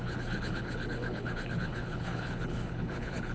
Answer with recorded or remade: remade